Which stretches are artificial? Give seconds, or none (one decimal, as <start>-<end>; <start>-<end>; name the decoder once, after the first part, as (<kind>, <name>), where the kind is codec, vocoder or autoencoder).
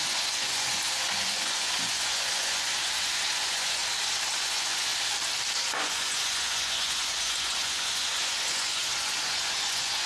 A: 0.0-3.8 (vocoder, Vocos); 4.4-4.9; 5.7-10.1